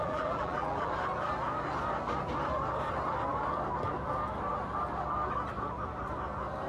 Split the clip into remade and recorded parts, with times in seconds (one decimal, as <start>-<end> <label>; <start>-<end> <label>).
0.0-0.9 remade; 0.9-6.7 recorded